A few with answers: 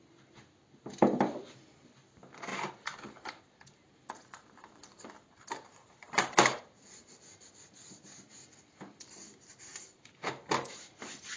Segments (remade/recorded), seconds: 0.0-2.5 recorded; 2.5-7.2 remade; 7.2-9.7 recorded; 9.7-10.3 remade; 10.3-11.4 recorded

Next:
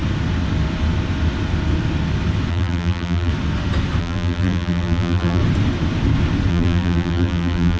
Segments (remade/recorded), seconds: 0.0-2.5 recorded; 2.5-3.3 remade; 3.3-4.0 recorded; 4.0-5.4 remade; 5.4-6.5 recorded; 6.5-7.8 remade

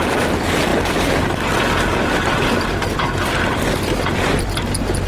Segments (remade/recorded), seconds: 0.0-5.1 recorded

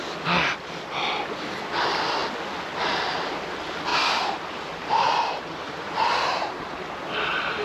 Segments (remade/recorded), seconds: 0.0-3.9 recorded; 3.9-6.8 remade; 6.8-7.6 recorded

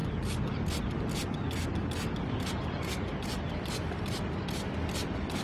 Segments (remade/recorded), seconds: 0.0-5.4 recorded

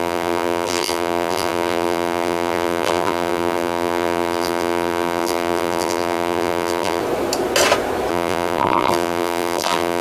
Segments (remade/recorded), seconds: 0.0-7.0 remade; 7.0-8.1 recorded; 8.1-10.0 remade

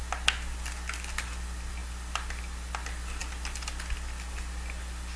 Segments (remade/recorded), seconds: 0.0-5.2 recorded

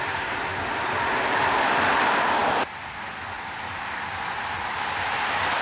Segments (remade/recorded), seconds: 0.0-0.5 recorded; 0.5-1.9 remade; 1.9-2.4 recorded; 2.4-3.1 remade; 3.1-5.6 recorded